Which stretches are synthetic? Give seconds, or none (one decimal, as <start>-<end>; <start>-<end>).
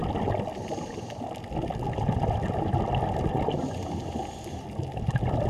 none